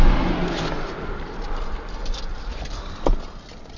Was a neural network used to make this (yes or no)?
no